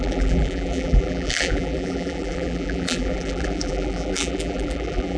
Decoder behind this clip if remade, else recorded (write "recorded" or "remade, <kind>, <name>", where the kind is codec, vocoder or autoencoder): remade, vocoder, BigVGAN v2